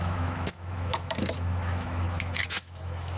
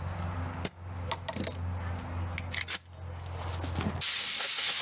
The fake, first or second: first